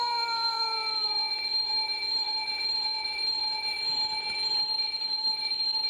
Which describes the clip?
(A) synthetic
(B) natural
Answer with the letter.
A